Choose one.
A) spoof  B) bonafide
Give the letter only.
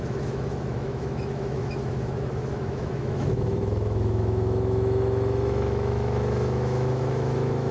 A